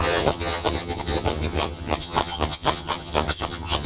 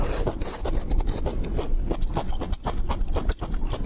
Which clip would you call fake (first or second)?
first